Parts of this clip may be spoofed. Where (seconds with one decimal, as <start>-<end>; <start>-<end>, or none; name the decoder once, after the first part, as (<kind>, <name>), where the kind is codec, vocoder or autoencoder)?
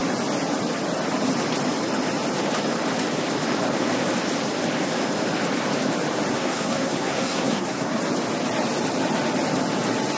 6.3-8.0 (codec, SNAC)